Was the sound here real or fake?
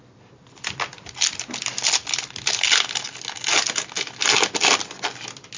real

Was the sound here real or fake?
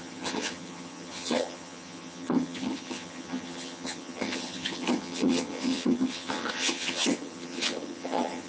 fake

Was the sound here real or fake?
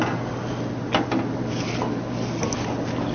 real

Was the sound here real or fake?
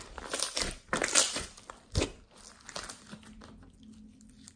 real